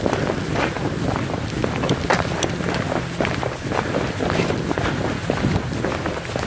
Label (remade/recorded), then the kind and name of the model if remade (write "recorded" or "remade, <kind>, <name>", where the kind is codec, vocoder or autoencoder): recorded